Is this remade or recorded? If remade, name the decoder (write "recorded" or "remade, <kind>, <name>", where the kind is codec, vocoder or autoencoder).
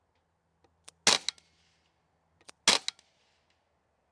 recorded